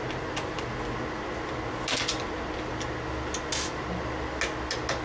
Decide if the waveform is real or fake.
real